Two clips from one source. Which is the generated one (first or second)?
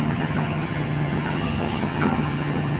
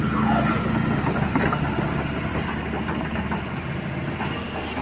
first